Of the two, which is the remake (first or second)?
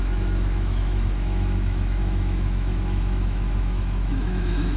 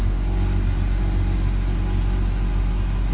first